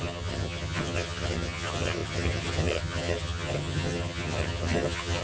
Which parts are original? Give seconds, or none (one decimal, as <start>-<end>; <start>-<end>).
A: none